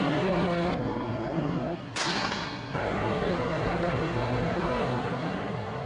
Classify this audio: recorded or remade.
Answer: remade